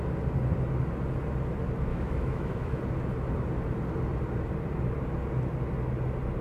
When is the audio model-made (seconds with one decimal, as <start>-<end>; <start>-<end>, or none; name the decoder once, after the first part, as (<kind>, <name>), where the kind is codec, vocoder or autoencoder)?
1.9-2.8 (autoencoder, DAC-VAE)